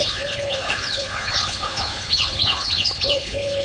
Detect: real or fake fake